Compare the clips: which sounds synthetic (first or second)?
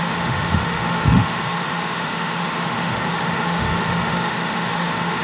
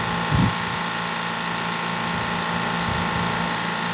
first